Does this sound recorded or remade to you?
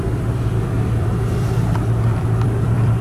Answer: remade